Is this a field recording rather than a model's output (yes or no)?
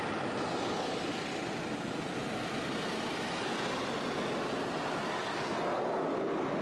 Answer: yes